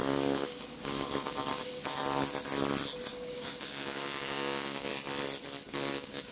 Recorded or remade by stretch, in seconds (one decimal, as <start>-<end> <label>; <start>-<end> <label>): 0.0-2.0 remade; 2.0-3.1 recorded; 3.1-4.9 remade; 4.9-5.7 recorded; 5.7-6.3 remade